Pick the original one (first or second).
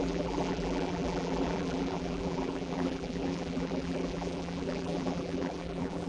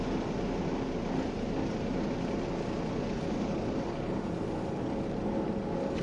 second